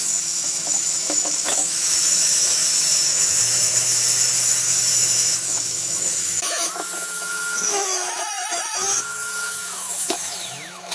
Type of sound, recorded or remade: remade